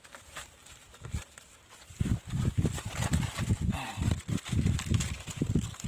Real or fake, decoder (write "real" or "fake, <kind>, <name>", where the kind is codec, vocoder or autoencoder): real